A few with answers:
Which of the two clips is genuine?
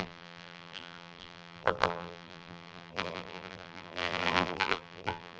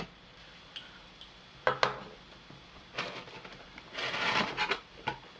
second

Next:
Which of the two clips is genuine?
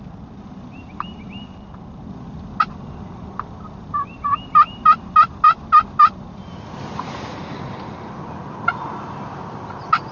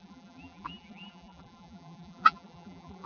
first